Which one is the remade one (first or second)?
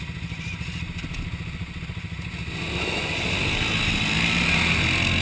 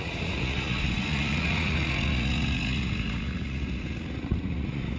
second